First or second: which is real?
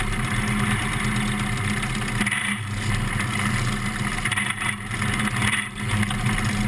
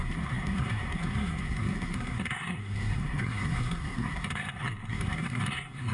first